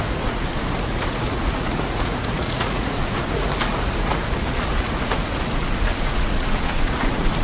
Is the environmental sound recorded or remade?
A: remade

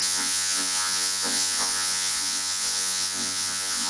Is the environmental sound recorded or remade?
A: remade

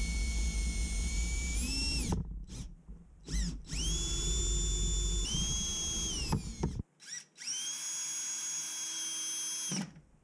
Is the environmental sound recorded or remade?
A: recorded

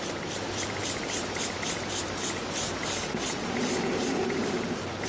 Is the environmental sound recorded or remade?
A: recorded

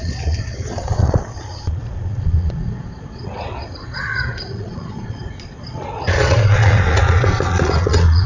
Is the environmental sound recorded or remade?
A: remade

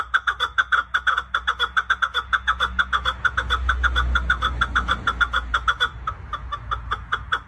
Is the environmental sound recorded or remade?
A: recorded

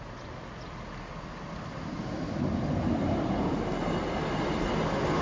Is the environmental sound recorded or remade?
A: recorded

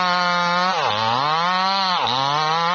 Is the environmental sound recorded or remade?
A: recorded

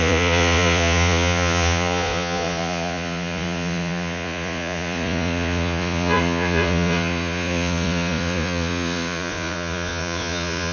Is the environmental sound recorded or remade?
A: remade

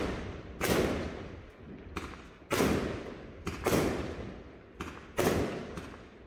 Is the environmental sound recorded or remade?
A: recorded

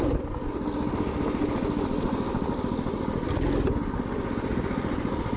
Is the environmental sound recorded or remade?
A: recorded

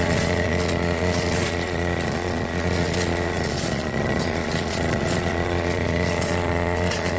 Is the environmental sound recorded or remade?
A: remade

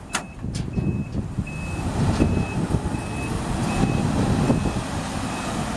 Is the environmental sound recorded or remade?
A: recorded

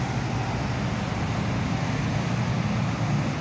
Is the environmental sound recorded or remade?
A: recorded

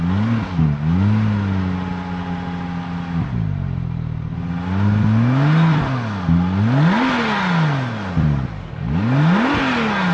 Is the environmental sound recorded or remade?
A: recorded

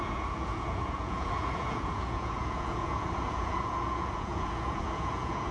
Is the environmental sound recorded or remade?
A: remade